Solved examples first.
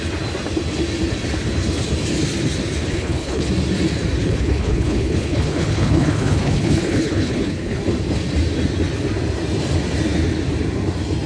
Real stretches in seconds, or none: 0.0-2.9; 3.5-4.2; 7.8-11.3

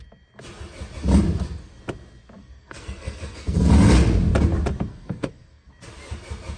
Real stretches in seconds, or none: 0.0-2.4; 3.7-4.9; 5.7-6.6

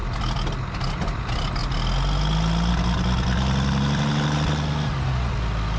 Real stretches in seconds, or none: 0.0-5.8

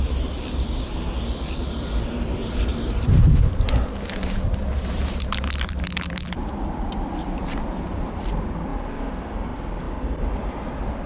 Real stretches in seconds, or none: 0.0-2.4; 6.4-7.4; 8.2-11.1